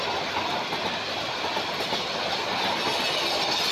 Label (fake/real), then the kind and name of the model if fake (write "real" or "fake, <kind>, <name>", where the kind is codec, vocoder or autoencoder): real